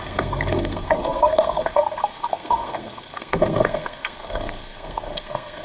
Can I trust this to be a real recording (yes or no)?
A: no